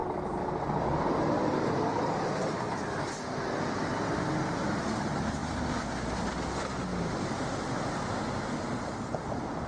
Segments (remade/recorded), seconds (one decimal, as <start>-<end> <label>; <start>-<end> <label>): 0.0-9.7 recorded

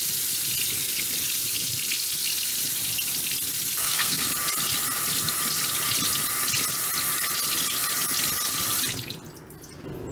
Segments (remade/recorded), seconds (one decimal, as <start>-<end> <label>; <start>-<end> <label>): 0.0-3.8 recorded; 3.8-4.3 remade; 4.3-10.1 recorded

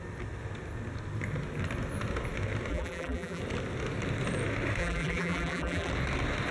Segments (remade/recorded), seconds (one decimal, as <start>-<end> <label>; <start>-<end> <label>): 0.0-2.7 recorded; 2.7-3.4 remade; 3.4-4.8 recorded; 4.8-5.9 remade; 5.9-6.5 recorded

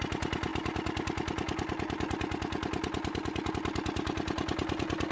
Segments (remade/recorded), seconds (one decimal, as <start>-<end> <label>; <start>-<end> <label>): 0.0-5.1 recorded